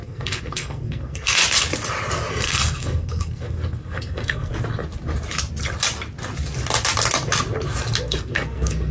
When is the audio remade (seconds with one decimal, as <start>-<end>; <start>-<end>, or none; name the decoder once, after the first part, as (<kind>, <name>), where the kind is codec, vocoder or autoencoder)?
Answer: 0.0-1.4 (codec, SNAC); 2.3-4.5; 8.0-8.9